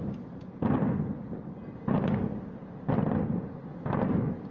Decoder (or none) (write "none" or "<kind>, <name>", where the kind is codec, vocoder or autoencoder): none